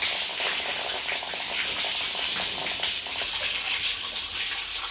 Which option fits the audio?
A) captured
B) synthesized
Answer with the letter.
A